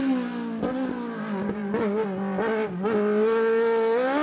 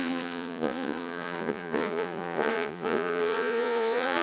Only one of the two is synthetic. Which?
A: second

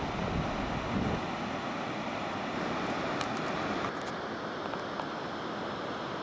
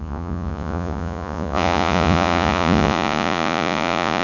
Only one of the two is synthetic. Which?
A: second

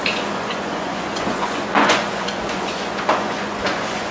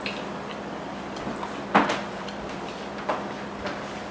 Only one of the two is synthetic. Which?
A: first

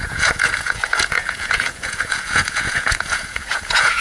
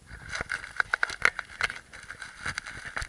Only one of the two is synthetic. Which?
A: first